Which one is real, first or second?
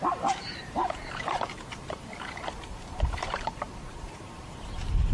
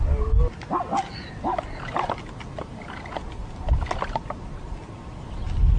second